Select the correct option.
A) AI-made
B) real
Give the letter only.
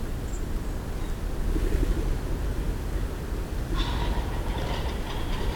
B